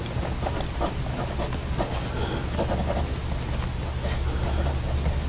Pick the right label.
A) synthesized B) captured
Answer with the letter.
B